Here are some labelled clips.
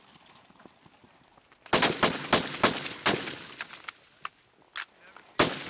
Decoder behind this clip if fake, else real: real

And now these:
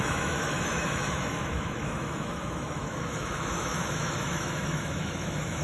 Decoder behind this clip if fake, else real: fake, autoencoder, DAC-VAE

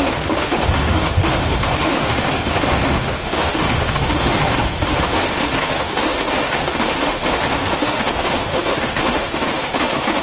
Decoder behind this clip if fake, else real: fake, autoencoder, DAC-VAE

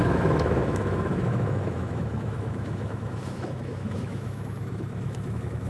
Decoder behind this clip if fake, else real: fake, autoencoder, DAC-VAE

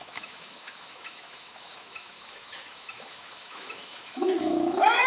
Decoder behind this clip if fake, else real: fake, autoencoder, DAC-VAE